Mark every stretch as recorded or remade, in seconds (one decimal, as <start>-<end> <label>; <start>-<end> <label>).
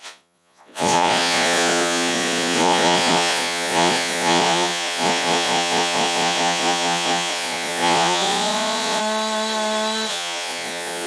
0.0-9.0 remade; 9.0-10.1 recorded; 10.1-11.1 remade